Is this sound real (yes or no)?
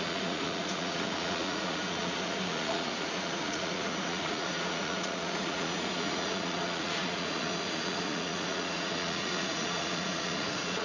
no